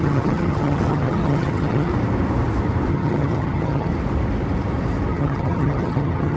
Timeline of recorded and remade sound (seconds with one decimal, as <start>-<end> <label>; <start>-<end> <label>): 0.0-1.9 remade; 1.9-2.9 recorded; 2.9-3.9 remade; 3.9-5.1 recorded; 5.1-6.4 remade